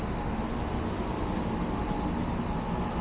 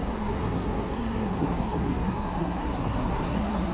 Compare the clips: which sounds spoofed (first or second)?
second